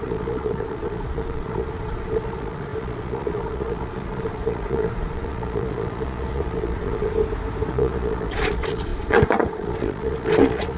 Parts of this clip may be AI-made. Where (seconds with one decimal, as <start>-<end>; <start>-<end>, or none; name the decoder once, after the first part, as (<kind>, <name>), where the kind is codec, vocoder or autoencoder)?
0.0-7.1 (vocoder, Vocos); 7.7-10.8